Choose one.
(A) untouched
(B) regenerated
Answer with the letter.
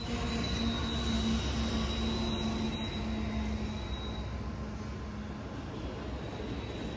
A